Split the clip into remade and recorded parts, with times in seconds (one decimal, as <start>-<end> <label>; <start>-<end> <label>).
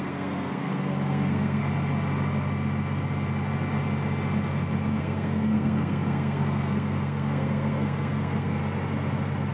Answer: 0.0-1.6 remade; 1.6-5.0 recorded; 5.0-8.6 remade; 8.6-9.5 recorded